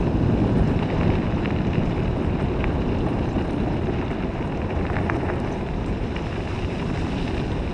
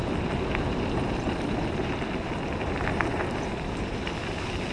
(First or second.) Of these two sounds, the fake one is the first